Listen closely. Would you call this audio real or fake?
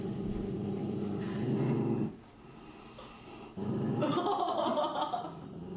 real